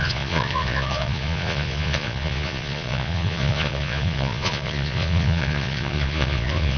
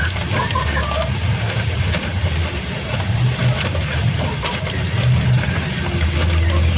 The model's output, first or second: first